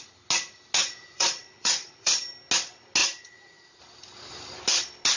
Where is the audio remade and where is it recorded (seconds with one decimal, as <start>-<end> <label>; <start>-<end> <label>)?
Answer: 0.0-0.8 recorded; 0.8-2.1 remade; 2.1-3.0 recorded; 3.0-3.8 remade; 3.8-5.2 recorded